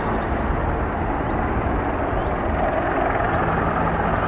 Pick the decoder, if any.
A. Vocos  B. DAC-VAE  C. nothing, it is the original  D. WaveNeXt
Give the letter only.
C